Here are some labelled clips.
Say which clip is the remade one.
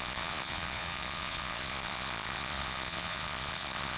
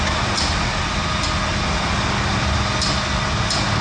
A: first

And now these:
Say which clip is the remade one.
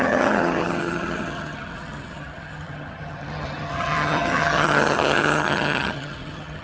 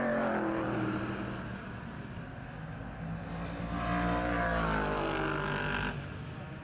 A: first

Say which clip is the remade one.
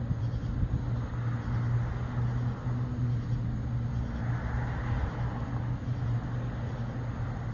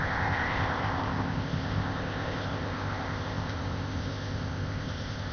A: second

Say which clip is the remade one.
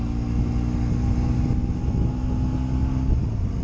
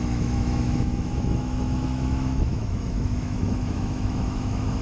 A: second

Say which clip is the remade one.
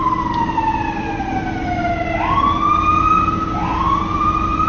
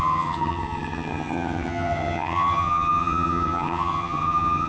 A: second